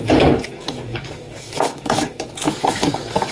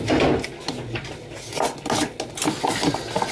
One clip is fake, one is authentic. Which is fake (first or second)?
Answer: first